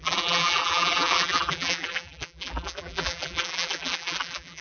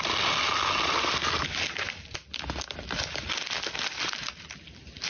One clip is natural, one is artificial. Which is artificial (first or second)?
first